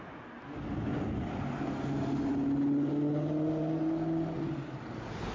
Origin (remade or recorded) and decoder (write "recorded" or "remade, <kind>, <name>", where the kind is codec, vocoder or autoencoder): recorded